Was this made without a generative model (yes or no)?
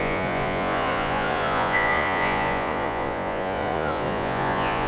no